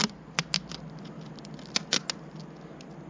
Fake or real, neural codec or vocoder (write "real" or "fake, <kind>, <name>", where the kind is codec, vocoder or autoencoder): real